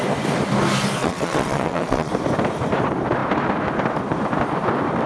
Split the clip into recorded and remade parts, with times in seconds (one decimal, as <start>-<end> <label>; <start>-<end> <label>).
0.0-1.0 recorded; 1.0-2.1 remade; 2.1-5.1 recorded